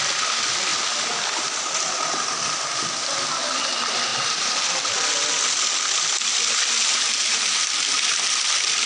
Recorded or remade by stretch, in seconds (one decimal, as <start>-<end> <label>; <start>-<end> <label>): 0.0-4.1 recorded; 4.1-4.8 remade; 4.8-6.9 recorded; 6.9-7.6 remade; 7.6-8.9 recorded